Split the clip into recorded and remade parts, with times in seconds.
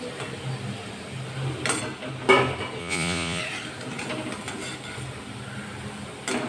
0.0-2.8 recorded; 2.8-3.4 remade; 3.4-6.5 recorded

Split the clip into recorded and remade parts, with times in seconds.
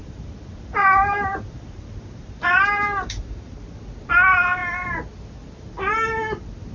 0.0-4.0 remade; 4.0-6.7 recorded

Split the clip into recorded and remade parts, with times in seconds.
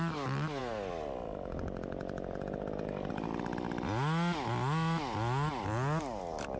0.0-6.6 recorded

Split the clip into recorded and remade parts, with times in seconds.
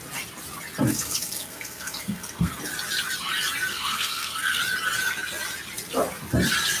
0.0-0.9 recorded; 0.9-2.5 remade; 2.5-3.7 recorded; 3.7-4.6 remade; 4.6-6.8 recorded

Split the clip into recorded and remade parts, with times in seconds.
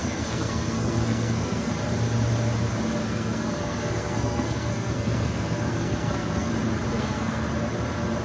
0.0-1.7 remade; 1.7-3.0 recorded; 3.0-6.5 remade; 6.5-6.9 recorded; 6.9-7.5 remade; 7.5-8.2 recorded